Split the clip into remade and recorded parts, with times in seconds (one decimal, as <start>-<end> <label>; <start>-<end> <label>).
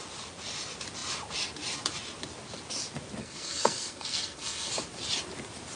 0.0-3.2 recorded; 3.2-4.7 remade; 4.7-5.8 recorded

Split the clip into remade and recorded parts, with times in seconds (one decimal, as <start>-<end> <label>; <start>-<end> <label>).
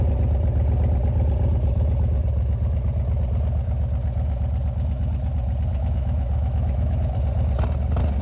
0.0-5.7 recorded; 5.7-7.1 remade; 7.1-8.2 recorded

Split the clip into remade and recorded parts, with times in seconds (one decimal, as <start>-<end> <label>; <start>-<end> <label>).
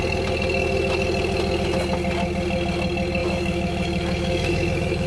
0.0-3.2 recorded; 3.2-5.1 remade